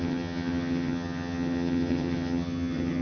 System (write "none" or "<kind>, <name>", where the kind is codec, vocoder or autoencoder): vocoder, HiFi-GAN